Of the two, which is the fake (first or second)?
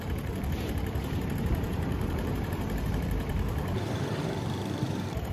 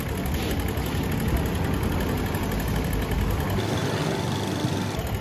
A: first